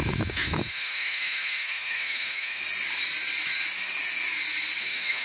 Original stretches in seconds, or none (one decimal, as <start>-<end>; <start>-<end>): 2.6-4.8